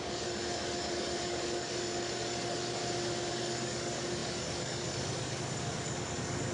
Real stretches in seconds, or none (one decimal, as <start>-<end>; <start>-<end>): 2.8-3.3